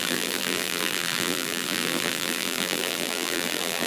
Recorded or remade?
remade